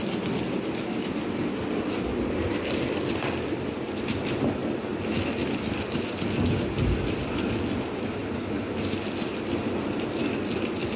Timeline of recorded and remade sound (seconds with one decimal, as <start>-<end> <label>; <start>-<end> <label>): 0.0-11.0 recorded